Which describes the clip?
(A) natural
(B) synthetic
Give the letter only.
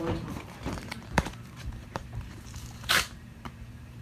B